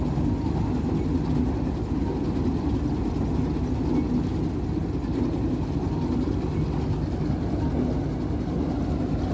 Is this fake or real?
real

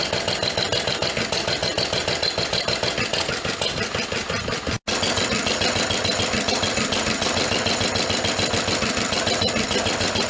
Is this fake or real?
real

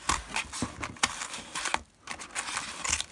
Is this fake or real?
real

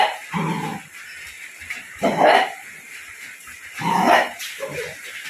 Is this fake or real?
real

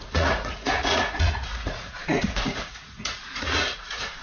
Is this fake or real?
fake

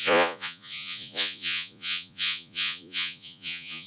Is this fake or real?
fake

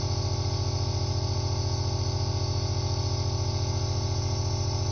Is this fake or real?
real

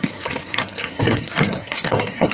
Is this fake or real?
fake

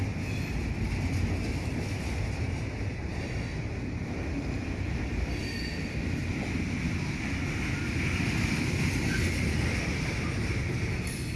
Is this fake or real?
real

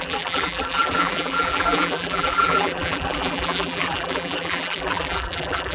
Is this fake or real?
fake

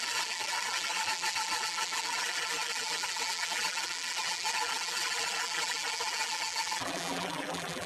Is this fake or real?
fake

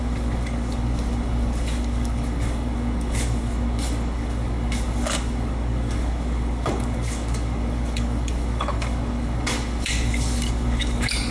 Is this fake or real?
fake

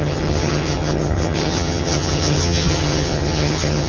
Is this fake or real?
fake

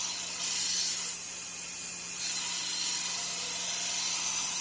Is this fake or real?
real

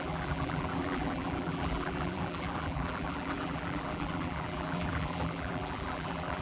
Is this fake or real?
fake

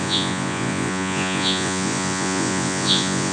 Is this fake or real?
fake